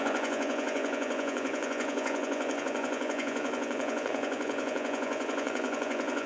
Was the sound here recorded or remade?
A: remade